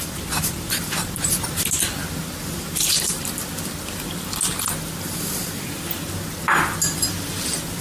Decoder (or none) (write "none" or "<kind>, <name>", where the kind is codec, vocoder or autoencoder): none